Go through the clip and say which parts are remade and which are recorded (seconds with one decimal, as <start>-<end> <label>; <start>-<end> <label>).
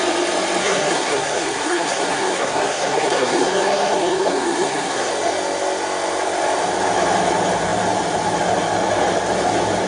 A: 0.0-0.6 recorded; 0.6-5.1 remade; 5.1-9.9 recorded